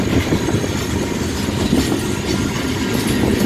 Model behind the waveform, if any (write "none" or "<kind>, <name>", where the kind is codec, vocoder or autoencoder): none